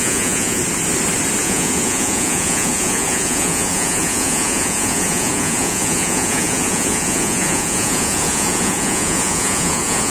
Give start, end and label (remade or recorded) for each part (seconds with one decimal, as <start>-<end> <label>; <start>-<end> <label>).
0.0-0.6 remade; 0.6-1.4 recorded; 1.4-10.1 remade